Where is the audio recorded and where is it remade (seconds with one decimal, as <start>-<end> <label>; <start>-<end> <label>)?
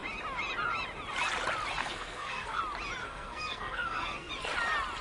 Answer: 0.0-1.8 recorded; 1.8-2.6 remade; 2.6-3.0 recorded; 3.0-4.3 remade; 4.3-5.0 recorded